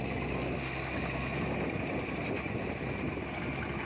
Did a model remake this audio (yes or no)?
no